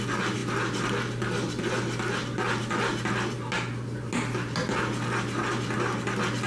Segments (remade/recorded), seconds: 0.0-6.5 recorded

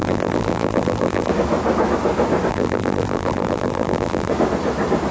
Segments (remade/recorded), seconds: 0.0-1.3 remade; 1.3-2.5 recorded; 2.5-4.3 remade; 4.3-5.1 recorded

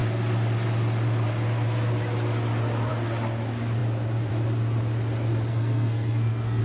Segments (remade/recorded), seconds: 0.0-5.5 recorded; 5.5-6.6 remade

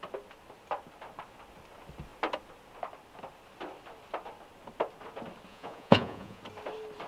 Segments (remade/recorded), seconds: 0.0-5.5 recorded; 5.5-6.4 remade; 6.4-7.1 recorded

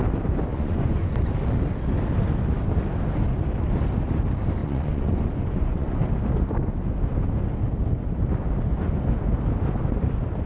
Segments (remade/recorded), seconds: 0.0-0.5 recorded; 0.5-1.3 remade; 1.3-4.6 recorded; 4.6-6.0 remade; 6.0-10.5 recorded